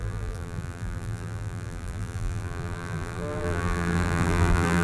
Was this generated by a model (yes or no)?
yes